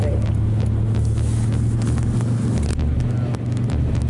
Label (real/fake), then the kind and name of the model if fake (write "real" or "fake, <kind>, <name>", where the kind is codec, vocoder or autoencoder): real